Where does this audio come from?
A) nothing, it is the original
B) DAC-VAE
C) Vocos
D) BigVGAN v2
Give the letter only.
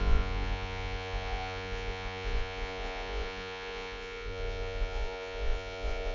C